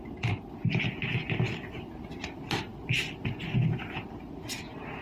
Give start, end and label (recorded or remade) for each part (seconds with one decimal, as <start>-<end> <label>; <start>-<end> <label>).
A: 0.0-5.0 recorded